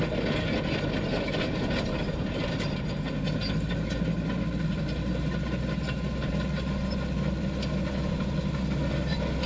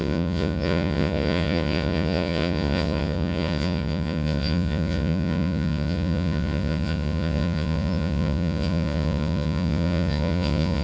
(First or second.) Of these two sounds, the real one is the first